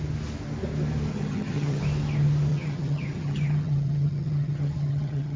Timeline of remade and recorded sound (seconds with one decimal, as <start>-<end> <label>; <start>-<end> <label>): 0.0-1.1 recorded; 1.1-1.8 remade; 1.8-2.5 recorded; 2.5-5.4 remade